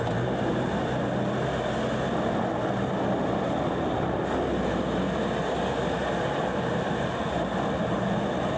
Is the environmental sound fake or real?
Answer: real